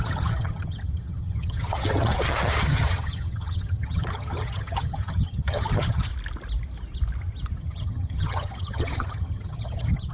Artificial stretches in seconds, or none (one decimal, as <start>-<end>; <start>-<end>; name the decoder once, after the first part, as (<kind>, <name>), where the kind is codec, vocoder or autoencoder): 0.0-6.1 (vocoder, HiFi-GAN); 7.6-10.1